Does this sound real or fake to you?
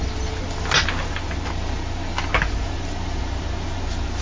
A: real